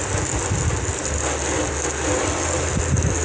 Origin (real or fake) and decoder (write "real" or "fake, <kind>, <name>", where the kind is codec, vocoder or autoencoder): real